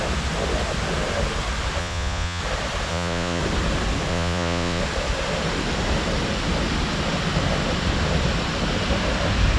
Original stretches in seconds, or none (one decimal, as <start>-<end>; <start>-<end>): 0.0-1.8; 2.4-2.9; 3.4-4.1; 4.8-9.6